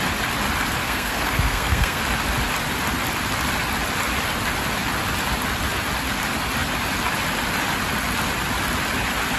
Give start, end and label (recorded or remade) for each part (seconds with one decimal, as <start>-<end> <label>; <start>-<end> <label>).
0.0-0.8 recorded; 0.8-2.0 remade; 2.0-9.4 recorded